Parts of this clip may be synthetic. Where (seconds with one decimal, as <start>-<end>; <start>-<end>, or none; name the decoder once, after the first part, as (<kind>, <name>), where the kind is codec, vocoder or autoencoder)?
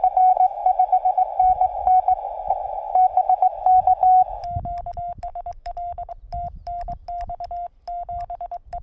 5.3-6.1 (autoencoder, DAC-VAE)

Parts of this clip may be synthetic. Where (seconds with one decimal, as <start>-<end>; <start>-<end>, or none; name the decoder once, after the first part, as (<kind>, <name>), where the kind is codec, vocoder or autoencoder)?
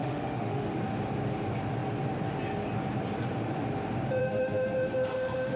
0.0-0.7 (autoencoder, DAC-VAE); 4.2-5.6